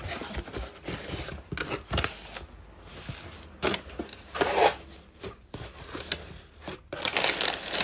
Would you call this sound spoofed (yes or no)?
no